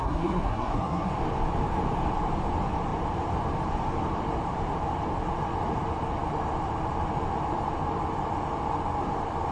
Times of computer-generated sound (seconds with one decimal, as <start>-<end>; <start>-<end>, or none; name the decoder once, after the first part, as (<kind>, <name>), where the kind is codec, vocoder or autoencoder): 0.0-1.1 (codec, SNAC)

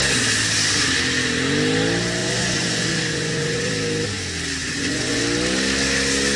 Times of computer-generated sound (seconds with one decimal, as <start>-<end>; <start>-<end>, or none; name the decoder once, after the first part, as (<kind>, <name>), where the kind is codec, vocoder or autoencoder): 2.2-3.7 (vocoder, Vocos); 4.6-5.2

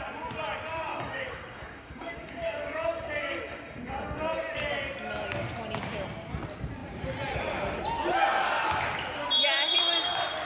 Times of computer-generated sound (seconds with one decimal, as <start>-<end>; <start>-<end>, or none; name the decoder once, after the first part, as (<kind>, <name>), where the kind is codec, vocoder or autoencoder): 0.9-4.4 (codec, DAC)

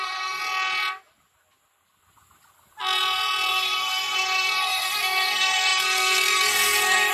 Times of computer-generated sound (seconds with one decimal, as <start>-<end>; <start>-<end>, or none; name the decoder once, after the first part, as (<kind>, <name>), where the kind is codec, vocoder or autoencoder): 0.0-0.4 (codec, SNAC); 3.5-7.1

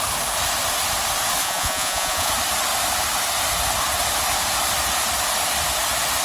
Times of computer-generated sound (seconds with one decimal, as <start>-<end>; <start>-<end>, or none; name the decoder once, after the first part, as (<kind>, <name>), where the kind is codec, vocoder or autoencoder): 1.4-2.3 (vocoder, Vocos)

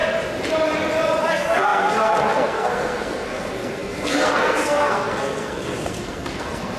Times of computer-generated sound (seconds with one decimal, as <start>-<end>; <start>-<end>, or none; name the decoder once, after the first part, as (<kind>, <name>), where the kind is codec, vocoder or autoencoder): 1.2-6.8 (codec, SNAC)

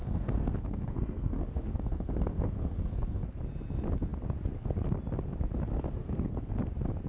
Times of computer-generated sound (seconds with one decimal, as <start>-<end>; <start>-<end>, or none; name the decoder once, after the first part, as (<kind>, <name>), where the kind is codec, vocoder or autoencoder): 0.0-3.4 (codec, SNAC); 5.7-6.5